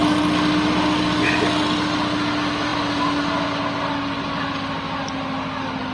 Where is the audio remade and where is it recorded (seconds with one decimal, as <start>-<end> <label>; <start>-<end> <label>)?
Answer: 0.0-5.9 recorded